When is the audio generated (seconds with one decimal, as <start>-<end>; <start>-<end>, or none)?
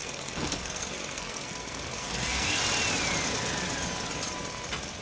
0.0-2.6